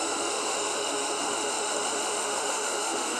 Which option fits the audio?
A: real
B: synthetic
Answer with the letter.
B